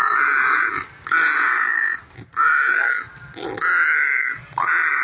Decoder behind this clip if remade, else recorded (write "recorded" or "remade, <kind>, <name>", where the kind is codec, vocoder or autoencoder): recorded